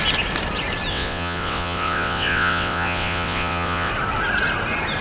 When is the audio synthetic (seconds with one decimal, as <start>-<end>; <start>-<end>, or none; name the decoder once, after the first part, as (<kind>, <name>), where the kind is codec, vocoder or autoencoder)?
0.9-3.9 (vocoder, WaveNeXt)